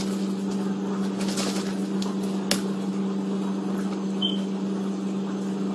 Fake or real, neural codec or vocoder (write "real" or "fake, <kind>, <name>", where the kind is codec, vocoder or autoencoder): real